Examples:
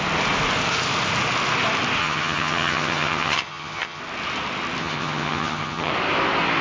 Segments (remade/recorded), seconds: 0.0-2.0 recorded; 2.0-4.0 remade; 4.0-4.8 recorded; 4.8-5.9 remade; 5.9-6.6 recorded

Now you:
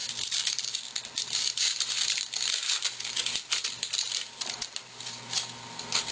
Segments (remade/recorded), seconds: 0.0-6.1 recorded

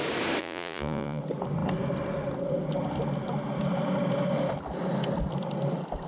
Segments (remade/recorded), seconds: 0.0-0.4 recorded; 0.4-1.2 remade; 1.2-6.1 recorded

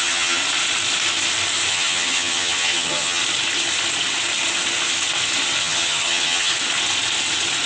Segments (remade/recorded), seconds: 0.0-0.4 remade; 0.4-1.7 recorded; 1.7-3.2 remade; 3.2-5.6 recorded; 5.6-6.5 remade; 6.5-7.7 recorded

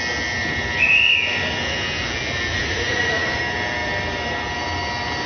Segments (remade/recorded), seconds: 0.0-2.5 recorded; 2.5-3.4 remade; 3.4-5.3 recorded